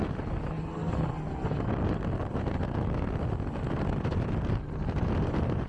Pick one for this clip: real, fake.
real